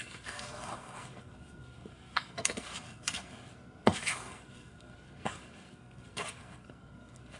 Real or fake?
fake